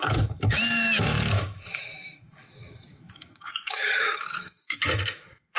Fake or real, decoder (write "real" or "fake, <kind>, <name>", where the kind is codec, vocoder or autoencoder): fake, autoencoder, DAC-VAE